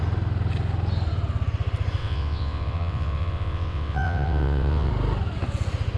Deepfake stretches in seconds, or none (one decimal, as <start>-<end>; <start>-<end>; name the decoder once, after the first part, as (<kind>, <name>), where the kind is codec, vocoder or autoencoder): 2.0-4.9 (vocoder, WaveNeXt)